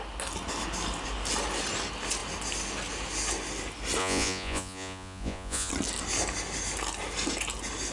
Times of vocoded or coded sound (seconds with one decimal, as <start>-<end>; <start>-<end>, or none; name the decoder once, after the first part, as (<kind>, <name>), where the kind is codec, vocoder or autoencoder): 4.0-5.7 (vocoder, Vocos)